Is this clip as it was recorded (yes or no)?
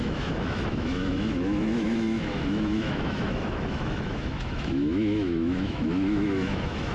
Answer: no